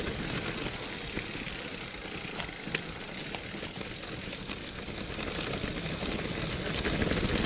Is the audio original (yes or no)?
yes